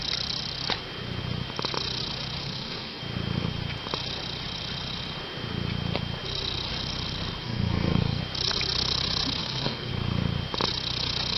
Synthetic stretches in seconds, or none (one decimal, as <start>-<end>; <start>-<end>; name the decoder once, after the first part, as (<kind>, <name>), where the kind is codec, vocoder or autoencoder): 2.4-3.0 (codec, SNAC); 7.4-8.2; 9.4-9.9

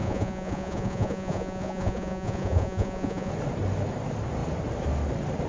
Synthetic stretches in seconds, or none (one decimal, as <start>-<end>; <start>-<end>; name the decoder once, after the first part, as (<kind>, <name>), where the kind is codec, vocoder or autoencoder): 0.0-3.3 (vocoder, Vocos)

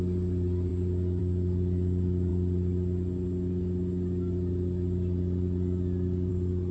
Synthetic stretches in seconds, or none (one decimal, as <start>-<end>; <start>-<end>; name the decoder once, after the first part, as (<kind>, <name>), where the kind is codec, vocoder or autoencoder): none

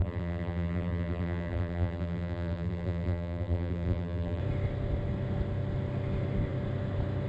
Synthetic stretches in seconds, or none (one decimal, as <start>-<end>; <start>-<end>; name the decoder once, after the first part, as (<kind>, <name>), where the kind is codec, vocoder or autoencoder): 0.0-4.4 (vocoder, BigVGAN v2)

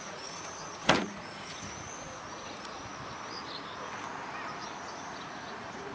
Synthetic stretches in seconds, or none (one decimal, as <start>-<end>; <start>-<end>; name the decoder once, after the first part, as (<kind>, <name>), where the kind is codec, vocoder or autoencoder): 0.0-2.9 (vocoder, Vocos); 4.8-5.9

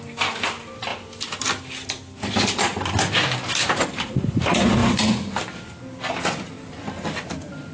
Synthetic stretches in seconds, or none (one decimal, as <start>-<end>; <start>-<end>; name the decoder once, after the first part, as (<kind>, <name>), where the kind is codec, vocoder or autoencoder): none

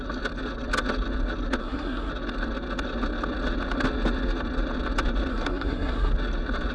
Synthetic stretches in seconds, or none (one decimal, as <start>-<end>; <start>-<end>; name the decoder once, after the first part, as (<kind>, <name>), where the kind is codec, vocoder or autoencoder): 1.6-2.1 (codec, SNAC); 5.3-6.1

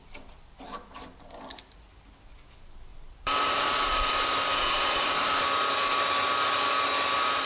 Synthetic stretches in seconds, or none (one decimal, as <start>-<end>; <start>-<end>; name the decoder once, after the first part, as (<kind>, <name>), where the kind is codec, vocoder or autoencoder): 2.9-4.0 (vocoder, BigVGAN v2); 4.5-5.5